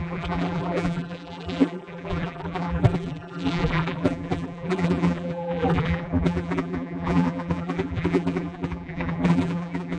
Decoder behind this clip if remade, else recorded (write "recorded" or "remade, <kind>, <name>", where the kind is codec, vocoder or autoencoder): remade, vocoder, BigVGAN v2